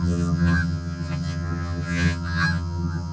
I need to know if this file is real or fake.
fake